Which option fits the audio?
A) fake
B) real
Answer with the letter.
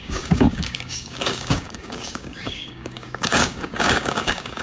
A